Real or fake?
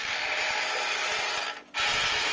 real